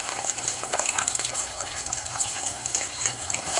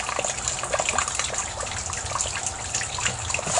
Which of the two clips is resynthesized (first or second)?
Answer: first